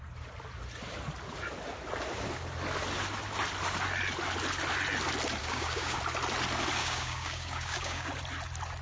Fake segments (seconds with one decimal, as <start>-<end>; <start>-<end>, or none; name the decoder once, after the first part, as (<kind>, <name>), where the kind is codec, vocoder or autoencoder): 5.4-6.0 (codec, DAC); 6.8-8.1